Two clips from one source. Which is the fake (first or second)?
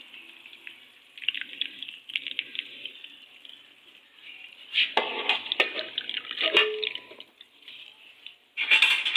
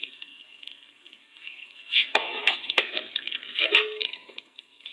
second